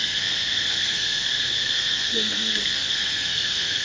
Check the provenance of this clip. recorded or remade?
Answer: remade